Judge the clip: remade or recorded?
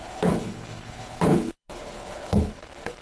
remade